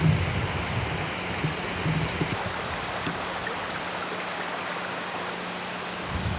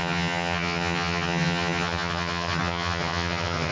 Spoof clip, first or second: second